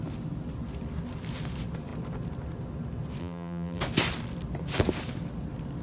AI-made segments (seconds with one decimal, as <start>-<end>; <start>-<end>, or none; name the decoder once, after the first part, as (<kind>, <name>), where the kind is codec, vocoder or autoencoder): 3.2-3.8 (vocoder, BigVGAN v2)